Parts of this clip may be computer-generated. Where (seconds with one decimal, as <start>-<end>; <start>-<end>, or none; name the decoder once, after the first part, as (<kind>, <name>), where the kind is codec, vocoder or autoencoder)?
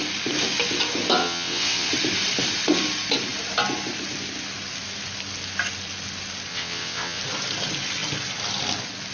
1.2-1.9 (vocoder, WaveNeXt); 6.5-7.2